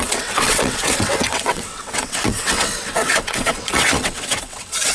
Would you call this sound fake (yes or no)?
yes